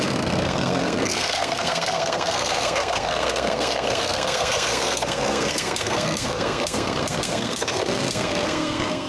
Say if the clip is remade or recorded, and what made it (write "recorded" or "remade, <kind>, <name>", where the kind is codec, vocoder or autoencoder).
remade, codec, SNAC